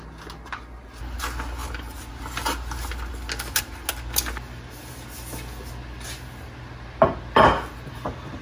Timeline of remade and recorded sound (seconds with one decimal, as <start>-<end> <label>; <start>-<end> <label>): 0.0-8.4 recorded